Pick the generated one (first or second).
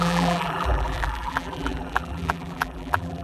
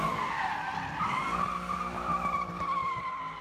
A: first